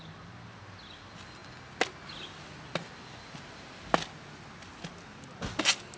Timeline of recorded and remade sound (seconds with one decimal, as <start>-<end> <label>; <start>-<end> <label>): 0.0-6.0 recorded